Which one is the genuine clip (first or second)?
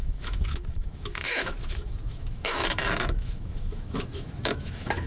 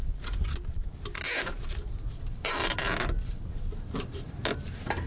second